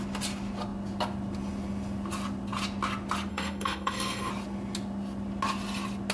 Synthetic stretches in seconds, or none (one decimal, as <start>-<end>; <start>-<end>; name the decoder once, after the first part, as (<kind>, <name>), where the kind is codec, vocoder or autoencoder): 3.3-4.3 (codec, SNAC)